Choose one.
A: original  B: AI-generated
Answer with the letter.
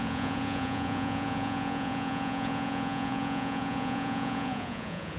B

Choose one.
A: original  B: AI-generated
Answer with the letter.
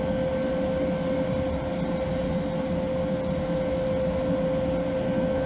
A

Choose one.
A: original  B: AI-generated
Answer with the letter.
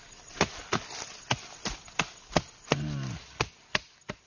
A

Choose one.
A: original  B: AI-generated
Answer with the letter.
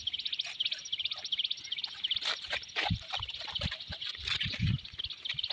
A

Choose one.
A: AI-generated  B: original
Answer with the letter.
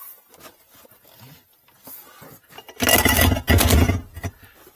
B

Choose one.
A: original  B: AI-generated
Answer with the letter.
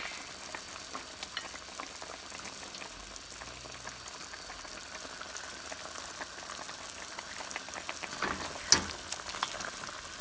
A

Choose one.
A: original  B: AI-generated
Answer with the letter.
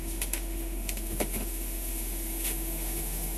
B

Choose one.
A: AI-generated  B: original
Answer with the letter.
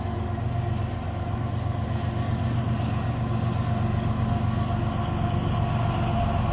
B